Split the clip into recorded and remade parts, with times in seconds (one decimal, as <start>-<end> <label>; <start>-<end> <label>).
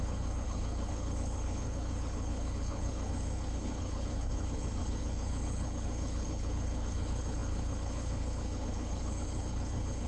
0.0-10.1 remade